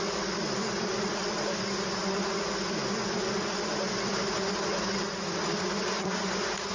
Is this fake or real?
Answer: real